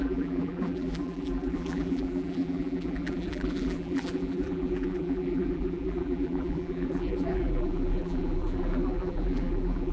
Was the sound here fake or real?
fake